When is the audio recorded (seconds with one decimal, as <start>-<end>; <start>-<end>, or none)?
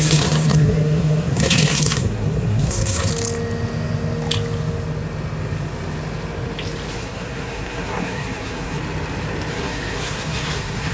3.1-6.9; 8.8-9.5